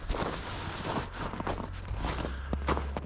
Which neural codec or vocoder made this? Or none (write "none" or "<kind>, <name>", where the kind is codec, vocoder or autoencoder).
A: none